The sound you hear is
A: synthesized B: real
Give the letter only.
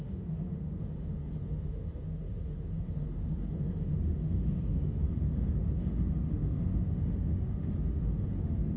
A